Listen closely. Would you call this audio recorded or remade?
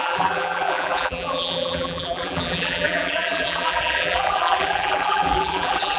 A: remade